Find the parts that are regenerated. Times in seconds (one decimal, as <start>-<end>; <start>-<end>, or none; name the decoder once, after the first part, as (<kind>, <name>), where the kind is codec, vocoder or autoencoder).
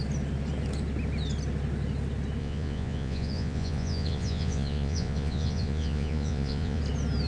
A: 2.4-6.8 (vocoder, Vocos)